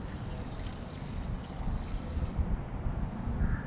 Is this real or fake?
real